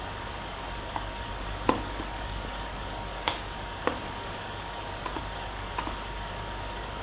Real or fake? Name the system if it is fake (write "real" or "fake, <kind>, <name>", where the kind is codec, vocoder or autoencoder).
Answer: fake, codec, DAC